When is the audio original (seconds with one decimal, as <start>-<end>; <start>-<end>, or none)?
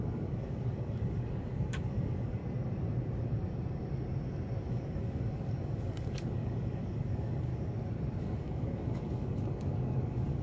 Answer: 2.4-4.7; 7.5-8.2